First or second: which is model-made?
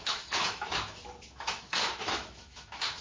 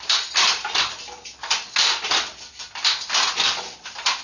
first